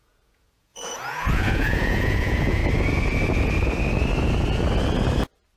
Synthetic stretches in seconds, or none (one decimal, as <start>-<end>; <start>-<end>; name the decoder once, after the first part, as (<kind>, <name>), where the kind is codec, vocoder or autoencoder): 0.0-2.6 (vocoder, Vocos)